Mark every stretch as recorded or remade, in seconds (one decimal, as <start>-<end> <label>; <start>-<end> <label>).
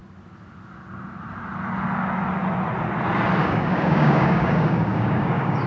0.0-3.4 recorded; 3.4-5.7 remade